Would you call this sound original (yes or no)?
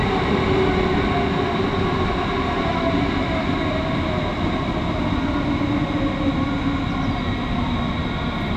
yes